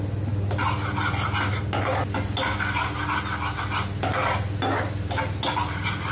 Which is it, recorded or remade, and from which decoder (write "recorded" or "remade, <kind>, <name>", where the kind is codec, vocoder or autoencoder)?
recorded